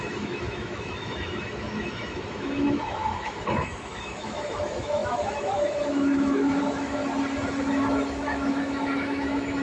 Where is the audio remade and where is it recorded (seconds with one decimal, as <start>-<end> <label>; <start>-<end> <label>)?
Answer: 0.0-7.0 remade; 7.0-7.6 recorded; 7.6-9.6 remade